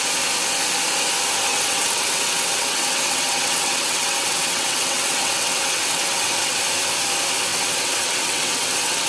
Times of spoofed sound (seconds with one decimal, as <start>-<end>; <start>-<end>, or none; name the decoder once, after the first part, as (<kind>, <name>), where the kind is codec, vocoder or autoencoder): 1.5-6.6 (vocoder, WaveNeXt); 7.5-9.1